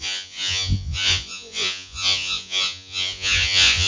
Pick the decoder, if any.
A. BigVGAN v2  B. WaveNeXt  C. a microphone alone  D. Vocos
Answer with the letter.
D